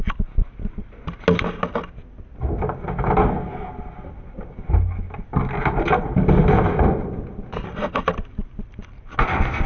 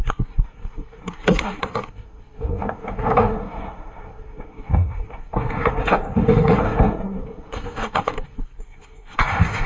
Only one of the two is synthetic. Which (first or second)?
second